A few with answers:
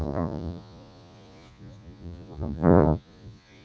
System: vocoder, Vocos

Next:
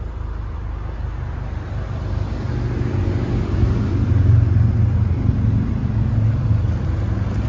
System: none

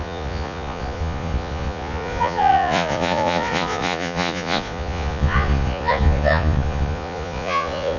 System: vocoder, Vocos